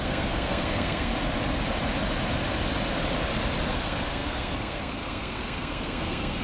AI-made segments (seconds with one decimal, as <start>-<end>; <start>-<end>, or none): 0.0-1.1; 3.7-6.4